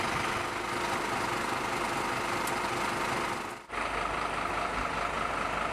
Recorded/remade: recorded